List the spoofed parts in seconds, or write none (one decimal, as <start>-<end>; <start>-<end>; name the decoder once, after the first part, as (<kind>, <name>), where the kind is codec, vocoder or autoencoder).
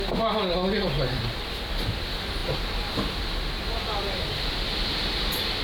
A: none